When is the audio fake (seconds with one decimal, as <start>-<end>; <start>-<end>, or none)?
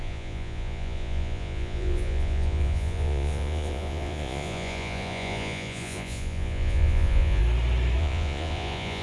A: 0.0-7.4; 8.0-9.0